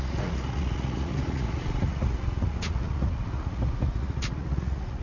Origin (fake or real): fake